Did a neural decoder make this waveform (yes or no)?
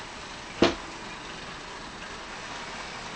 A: no